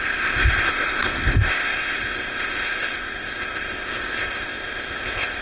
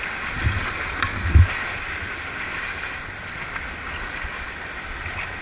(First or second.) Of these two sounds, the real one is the second